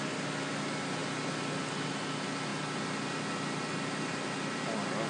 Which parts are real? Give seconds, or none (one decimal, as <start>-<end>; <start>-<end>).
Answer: 0.0-5.1